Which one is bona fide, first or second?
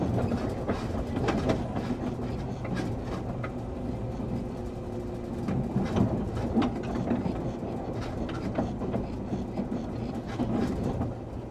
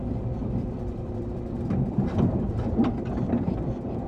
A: first